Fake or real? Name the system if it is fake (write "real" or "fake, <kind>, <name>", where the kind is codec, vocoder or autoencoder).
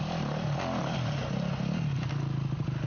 real